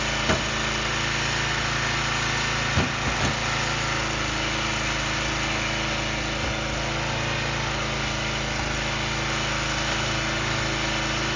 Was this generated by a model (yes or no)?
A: no